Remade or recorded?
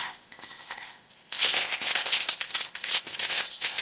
remade